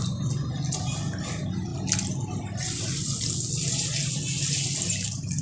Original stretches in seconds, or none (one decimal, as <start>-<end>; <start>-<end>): 0.0-5.4